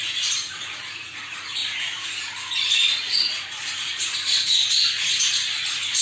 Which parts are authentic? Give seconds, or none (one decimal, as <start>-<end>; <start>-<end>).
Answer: none